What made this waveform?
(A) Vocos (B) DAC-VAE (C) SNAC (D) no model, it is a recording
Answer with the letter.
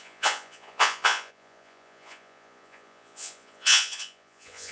A